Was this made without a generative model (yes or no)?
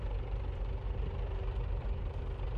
no